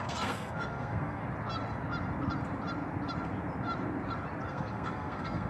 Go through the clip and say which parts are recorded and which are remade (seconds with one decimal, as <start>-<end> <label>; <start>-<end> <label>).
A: 0.0-1.2 remade; 1.2-4.5 recorded; 4.5-5.5 remade